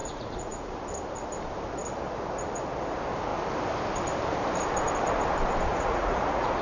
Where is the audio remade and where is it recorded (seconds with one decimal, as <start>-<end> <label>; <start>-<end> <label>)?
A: 0.0-0.8 remade; 0.8-5.7 recorded; 5.7-6.6 remade

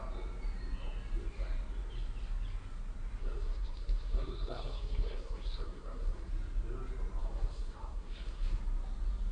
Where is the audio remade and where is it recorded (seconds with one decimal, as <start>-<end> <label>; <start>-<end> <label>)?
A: 0.0-3.2 recorded; 3.2-6.3 remade; 6.3-7.2 recorded; 7.2-8.6 remade; 8.6-9.3 recorded

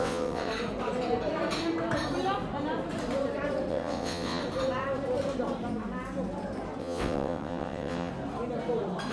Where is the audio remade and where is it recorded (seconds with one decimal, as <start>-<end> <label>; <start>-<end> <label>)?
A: 0.0-0.5 remade; 0.5-3.7 recorded; 3.7-4.4 remade; 4.4-6.8 recorded; 6.8-8.1 remade; 8.1-9.1 recorded